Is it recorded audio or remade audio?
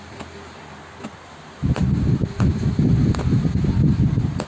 recorded